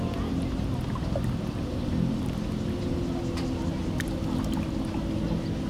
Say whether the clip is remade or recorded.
recorded